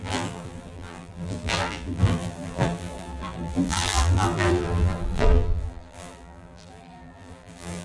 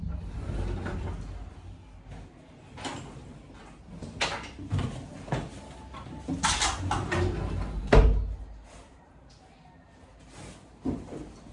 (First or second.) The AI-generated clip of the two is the first